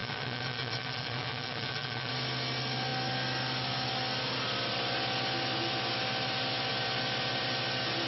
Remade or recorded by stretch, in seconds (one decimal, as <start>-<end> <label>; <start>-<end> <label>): 0.0-2.1 remade; 2.1-8.1 recorded